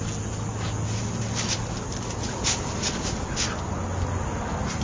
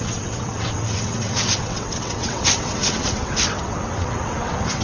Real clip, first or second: first